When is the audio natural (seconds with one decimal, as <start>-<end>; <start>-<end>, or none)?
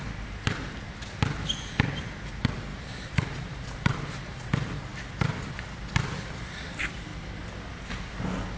0.0-2.7; 4.8-8.6